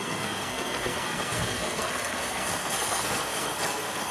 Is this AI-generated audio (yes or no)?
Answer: yes